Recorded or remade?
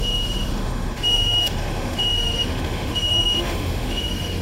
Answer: remade